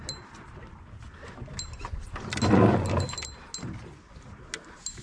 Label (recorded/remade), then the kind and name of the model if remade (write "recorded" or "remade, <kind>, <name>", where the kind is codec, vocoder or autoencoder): recorded